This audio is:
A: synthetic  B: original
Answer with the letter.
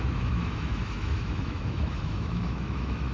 A